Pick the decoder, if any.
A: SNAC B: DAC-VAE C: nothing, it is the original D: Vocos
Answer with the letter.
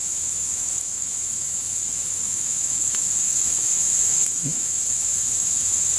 B